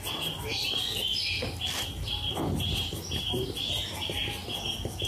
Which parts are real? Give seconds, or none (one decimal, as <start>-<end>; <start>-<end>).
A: 0.0-5.1